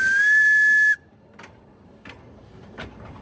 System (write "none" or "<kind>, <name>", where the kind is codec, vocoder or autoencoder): none